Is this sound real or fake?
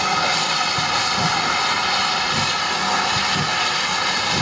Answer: real